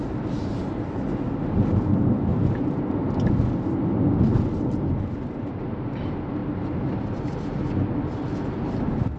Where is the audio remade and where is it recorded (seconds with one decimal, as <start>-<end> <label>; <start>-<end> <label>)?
0.0-2.3 recorded; 2.3-3.3 remade; 3.3-6.4 recorded; 6.4-7.2 remade; 7.2-9.2 recorded